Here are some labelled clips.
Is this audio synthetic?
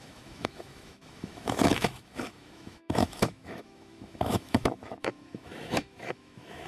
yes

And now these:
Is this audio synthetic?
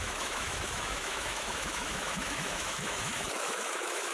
yes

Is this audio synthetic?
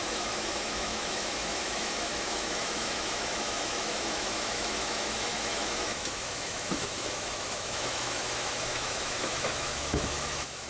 yes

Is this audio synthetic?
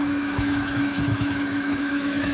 yes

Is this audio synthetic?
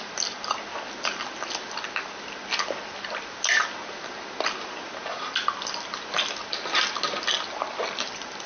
no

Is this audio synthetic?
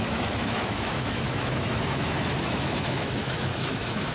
yes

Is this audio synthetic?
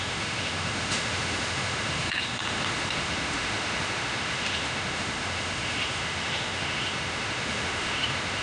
yes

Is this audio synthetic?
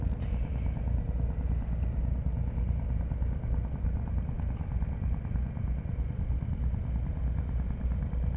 no